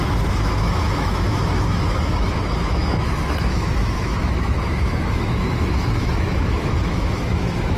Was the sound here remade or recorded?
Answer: remade